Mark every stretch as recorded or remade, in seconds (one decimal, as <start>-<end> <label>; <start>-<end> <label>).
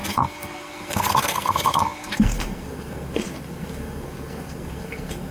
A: 0.0-5.3 remade